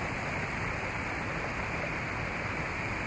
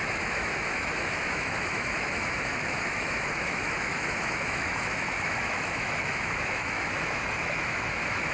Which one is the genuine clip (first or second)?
first